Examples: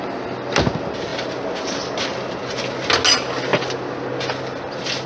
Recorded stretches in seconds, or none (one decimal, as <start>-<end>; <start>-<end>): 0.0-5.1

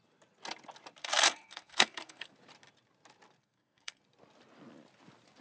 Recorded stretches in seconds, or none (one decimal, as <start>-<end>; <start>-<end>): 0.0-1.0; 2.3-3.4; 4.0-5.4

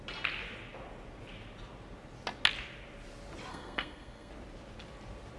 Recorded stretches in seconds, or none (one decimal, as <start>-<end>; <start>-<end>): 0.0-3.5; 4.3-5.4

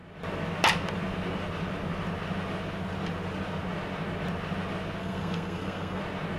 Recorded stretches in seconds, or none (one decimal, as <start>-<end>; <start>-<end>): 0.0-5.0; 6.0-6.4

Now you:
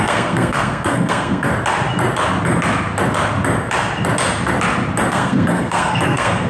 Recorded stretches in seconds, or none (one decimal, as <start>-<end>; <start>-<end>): 1.5-5.1